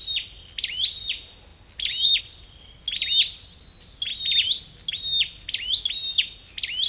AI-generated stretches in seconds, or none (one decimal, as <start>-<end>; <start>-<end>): none